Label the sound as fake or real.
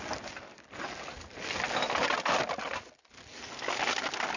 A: real